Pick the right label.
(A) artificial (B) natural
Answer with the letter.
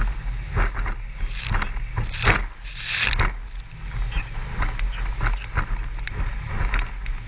B